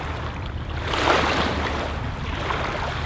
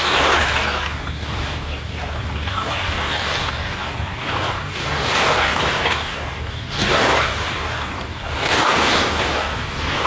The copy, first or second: second